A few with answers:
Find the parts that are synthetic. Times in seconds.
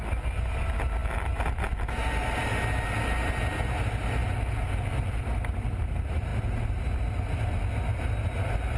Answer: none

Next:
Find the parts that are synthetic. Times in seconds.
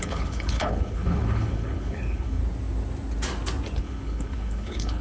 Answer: 0.0-2.4 (codec, HILCodec); 3.8-5.0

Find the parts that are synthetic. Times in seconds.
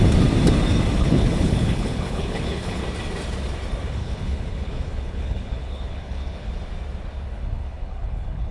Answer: 1.0-2.8 (codec, HILCodec); 4.0-6.5; 7.3-8.5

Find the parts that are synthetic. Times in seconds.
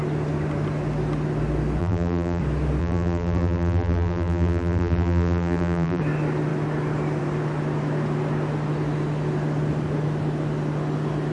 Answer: 1.8-2.4 (vocoder, BigVGAN v2); 2.8-6.0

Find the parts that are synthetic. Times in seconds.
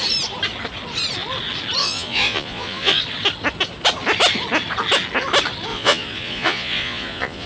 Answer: 1.8-3.0 (vocoder, Vocos); 5.7-7.5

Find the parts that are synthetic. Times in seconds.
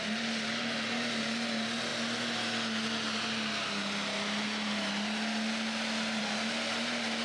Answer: none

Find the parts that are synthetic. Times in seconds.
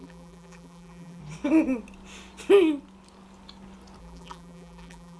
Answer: 0.0-1.2 (vocoder, BigVGAN v2); 4.0-5.2